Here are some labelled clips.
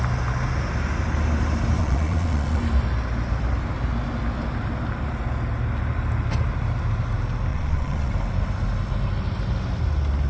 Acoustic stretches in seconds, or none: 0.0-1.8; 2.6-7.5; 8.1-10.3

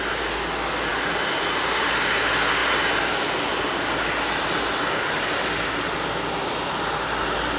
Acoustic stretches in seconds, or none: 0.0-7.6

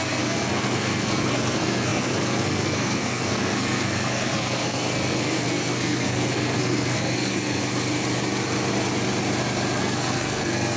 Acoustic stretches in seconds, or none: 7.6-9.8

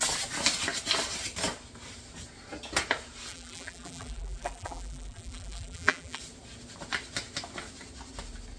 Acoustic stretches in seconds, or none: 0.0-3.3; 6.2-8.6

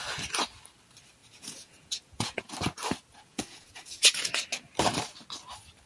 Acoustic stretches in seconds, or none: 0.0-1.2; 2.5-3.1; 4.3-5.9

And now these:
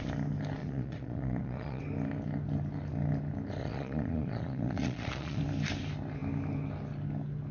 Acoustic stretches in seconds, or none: 0.0-0.6; 1.8-3.6; 5.4-7.5